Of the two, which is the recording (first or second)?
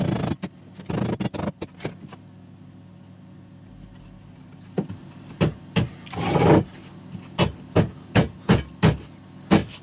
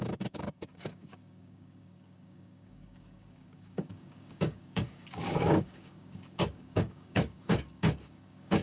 first